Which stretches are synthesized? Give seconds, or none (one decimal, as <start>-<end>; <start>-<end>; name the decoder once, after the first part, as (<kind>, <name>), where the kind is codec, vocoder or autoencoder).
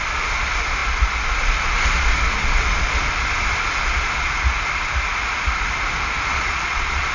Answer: 6.3-7.1 (vocoder, Vocos)